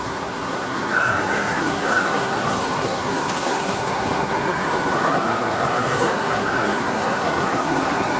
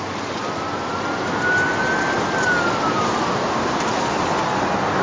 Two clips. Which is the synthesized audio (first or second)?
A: first